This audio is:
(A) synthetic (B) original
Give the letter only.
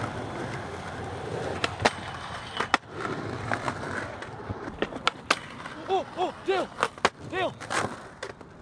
B